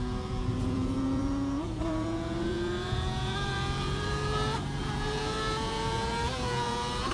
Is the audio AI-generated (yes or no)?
yes